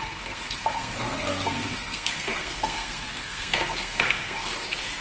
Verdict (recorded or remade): remade